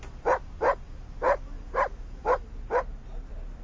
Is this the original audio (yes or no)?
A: yes